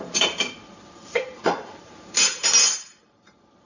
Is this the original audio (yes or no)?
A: no